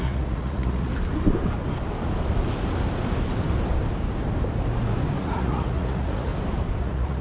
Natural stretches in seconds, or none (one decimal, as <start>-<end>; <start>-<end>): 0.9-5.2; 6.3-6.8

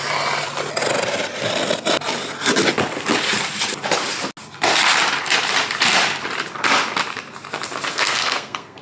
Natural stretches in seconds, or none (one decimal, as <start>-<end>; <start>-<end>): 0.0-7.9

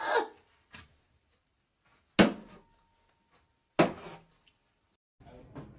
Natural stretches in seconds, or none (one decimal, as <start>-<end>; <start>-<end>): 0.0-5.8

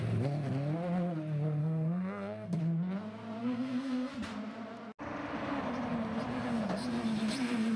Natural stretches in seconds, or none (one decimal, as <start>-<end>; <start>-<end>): 0.0-1.6; 2.6-3.4; 4.1-7.8